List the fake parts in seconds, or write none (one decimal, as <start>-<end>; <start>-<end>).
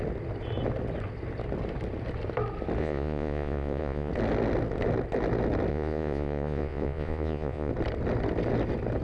2.8-4.1; 5.7-7.7